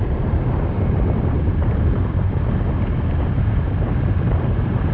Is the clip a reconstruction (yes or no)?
yes